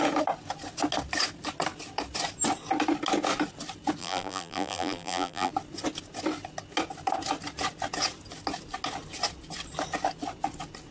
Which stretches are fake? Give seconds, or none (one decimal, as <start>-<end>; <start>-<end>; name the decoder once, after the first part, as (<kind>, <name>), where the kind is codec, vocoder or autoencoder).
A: 4.0-5.5 (vocoder, BigVGAN v2)